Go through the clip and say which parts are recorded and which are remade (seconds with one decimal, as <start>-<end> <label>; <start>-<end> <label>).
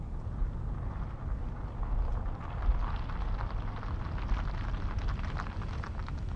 0.0-6.4 recorded